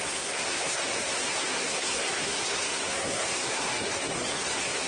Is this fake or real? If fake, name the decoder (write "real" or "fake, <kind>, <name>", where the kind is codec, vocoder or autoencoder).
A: fake, codec, SNAC